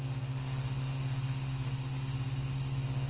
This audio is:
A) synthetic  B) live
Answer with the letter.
B